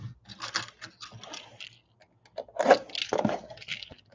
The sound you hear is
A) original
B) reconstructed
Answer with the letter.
A